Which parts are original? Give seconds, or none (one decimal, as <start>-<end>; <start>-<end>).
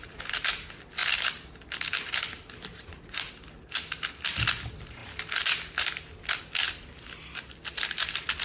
0.0-2.7; 3.3-8.4